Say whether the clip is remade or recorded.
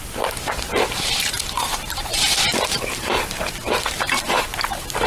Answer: remade